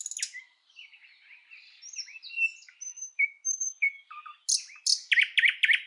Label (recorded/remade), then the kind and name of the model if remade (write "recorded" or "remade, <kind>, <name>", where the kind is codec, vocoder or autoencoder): recorded